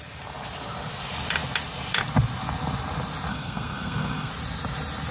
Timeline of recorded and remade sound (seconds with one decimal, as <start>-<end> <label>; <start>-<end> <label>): 0.0-3.3 recorded; 3.3-4.3 remade; 4.3-5.1 recorded